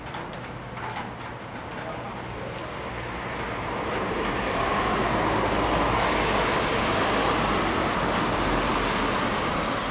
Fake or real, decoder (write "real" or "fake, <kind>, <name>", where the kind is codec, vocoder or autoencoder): real